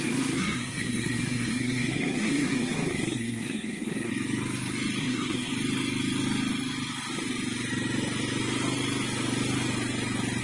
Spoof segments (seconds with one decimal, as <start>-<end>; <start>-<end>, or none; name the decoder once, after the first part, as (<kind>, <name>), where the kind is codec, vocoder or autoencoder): 0.0-4.1 (codec, SNAC); 5.0-5.5